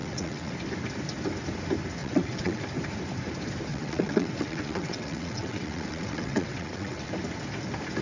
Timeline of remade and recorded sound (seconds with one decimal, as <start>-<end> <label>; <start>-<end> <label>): 0.0-0.5 remade; 0.5-2.0 recorded; 2.0-2.6 remade; 2.6-3.7 recorded; 3.7-7.1 remade; 7.1-8.0 recorded